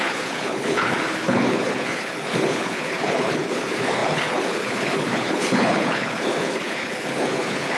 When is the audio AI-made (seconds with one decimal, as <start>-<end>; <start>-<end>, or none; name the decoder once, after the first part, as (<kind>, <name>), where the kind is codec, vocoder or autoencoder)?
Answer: 0.0-7.8 (codec, HILCodec)